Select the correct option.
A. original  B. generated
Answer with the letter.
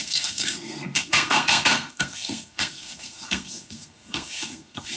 B